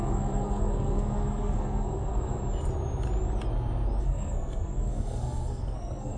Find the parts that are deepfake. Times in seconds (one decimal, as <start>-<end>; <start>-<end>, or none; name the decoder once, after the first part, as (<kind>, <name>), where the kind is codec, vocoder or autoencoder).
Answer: 0.0-2.4 (codec, SNAC); 4.0-6.2